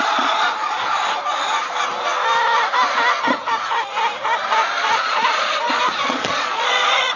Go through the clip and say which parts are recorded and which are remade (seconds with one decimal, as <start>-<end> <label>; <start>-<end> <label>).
0.0-0.5 remade; 0.5-4.8 recorded; 4.8-7.2 remade